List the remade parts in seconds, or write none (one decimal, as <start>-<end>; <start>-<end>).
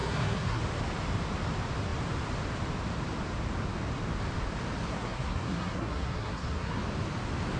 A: 0.0-0.6; 4.9-6.8